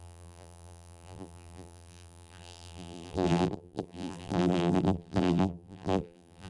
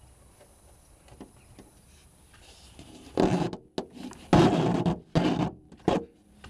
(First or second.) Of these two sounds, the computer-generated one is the first